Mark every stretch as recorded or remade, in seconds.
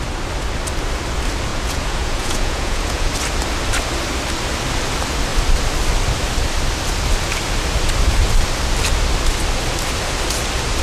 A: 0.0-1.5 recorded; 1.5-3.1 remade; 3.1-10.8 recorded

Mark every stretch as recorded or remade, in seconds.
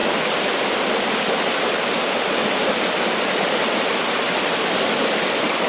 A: 0.0-5.7 recorded